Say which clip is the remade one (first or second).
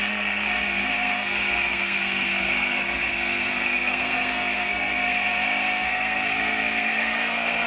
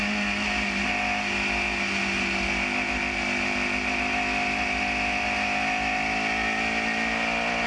first